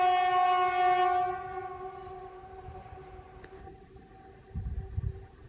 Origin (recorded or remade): recorded